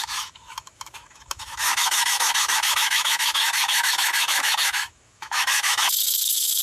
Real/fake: fake